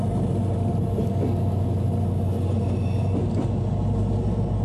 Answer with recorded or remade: recorded